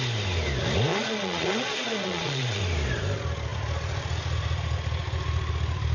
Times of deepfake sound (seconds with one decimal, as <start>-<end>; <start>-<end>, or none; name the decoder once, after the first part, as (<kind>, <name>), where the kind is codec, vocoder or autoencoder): 0.9-2.6 (vocoder, Vocos)